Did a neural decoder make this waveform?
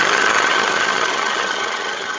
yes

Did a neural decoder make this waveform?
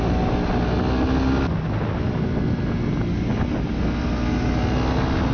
no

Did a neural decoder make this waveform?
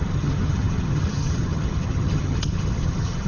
yes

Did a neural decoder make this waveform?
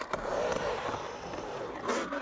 no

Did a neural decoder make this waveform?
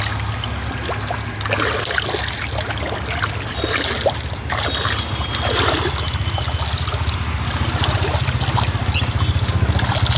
no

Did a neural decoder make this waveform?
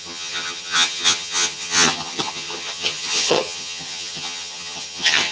yes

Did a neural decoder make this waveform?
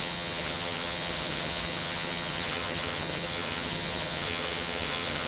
yes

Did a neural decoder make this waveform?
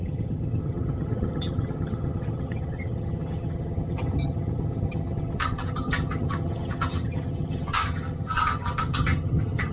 yes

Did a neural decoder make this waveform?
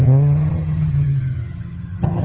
yes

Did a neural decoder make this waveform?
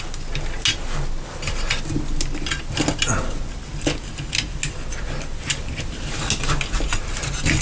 no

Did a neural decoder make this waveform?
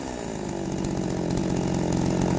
no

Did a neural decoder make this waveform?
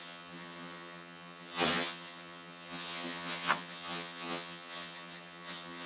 yes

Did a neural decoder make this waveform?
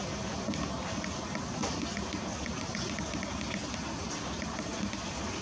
no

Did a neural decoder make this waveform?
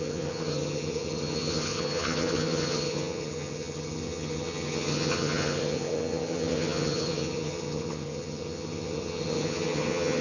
yes